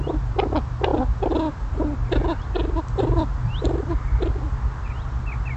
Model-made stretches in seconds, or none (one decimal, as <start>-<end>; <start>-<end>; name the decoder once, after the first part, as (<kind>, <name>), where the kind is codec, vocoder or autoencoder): 3.4-4.4 (vocoder, BigVGAN v2)